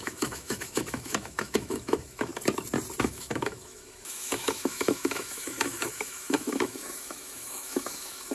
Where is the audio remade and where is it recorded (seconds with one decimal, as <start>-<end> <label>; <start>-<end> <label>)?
0.0-2.3 remade; 2.3-3.0 recorded; 3.0-8.3 remade